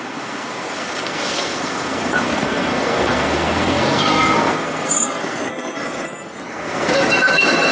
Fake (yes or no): yes